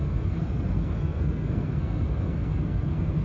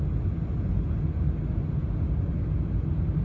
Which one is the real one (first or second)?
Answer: second